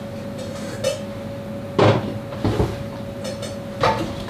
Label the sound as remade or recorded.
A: recorded